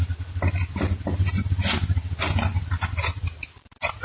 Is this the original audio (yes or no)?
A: yes